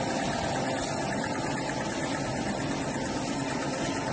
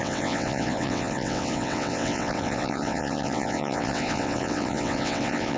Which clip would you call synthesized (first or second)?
second